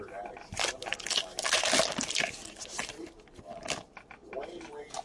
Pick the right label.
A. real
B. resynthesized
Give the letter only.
A